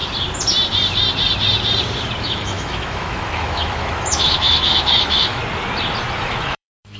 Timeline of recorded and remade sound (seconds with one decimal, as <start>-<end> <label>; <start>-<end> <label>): 0.0-2.2 recorded; 2.2-5.4 remade; 5.4-6.2 recorded; 6.2-7.0 remade